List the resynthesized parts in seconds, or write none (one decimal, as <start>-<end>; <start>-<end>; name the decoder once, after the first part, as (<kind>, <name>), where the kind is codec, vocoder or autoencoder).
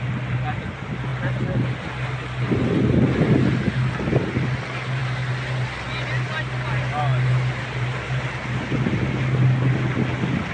none